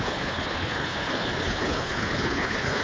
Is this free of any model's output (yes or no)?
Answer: no